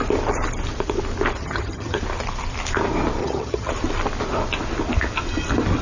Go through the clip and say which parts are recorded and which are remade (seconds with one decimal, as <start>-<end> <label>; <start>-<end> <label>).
0.0-1.4 recorded; 1.4-2.0 remade; 2.0-3.2 recorded; 3.2-3.7 remade; 3.7-5.8 recorded